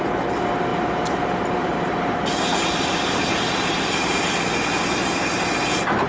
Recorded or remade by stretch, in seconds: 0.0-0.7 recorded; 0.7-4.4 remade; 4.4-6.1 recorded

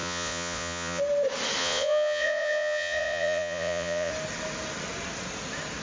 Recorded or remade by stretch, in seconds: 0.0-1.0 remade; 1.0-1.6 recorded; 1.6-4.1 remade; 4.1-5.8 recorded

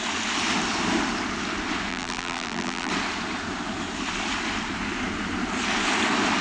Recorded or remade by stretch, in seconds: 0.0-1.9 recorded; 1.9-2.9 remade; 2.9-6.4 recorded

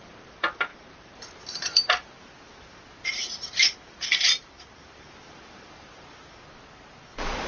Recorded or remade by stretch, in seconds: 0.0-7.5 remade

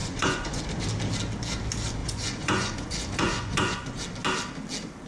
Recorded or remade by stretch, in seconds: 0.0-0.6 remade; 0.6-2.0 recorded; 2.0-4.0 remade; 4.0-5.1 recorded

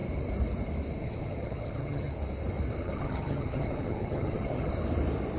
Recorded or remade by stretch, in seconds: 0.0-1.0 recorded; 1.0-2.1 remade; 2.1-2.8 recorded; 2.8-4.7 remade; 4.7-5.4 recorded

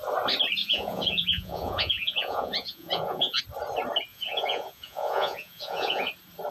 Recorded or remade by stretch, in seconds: 0.0-0.6 recorded; 0.6-3.4 remade; 3.4-4.1 recorded; 4.1-6.1 remade; 6.1-6.5 recorded

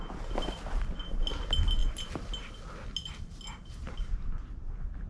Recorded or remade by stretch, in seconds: 0.0-5.1 recorded